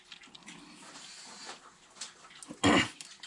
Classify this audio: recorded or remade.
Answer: recorded